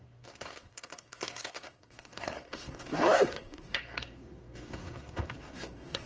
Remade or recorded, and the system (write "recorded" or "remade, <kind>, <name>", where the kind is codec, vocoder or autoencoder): remade, codec, SNAC